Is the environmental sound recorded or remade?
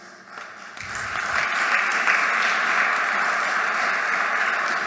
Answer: recorded